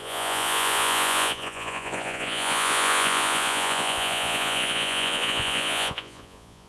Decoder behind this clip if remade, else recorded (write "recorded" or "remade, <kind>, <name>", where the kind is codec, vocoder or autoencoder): remade, vocoder, Vocos